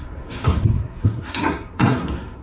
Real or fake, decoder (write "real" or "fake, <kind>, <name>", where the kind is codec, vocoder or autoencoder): fake, codec, SNAC